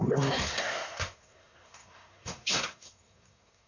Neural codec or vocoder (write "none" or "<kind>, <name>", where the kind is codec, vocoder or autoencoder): codec, SNAC